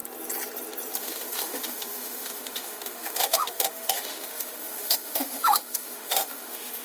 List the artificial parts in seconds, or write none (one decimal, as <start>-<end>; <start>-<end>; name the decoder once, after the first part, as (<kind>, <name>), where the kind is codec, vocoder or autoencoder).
1.0-6.8 (autoencoder, DAC-VAE)